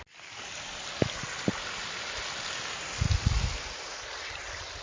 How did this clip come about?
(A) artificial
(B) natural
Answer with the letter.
B